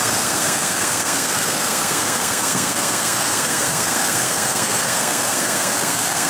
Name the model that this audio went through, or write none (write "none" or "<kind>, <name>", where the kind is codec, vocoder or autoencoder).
codec, SNAC